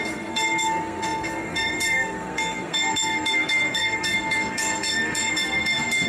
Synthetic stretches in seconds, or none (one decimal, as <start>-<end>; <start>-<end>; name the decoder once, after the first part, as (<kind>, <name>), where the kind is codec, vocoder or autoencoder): 0.0-6.1 (codec, SNAC)